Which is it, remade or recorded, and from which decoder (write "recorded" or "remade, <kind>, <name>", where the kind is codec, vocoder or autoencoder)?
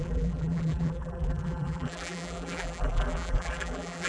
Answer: remade, vocoder, BigVGAN v2